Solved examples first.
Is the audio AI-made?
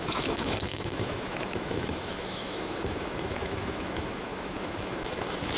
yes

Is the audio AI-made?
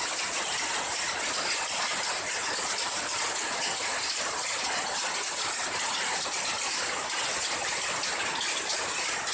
no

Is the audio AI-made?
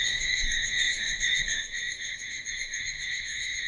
yes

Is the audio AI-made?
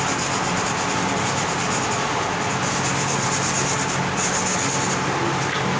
no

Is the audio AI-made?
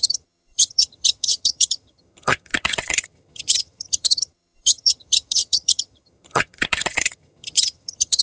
yes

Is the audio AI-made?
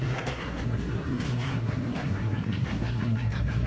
yes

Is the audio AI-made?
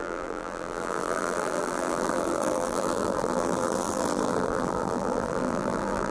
yes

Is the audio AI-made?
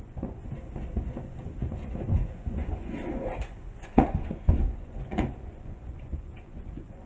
yes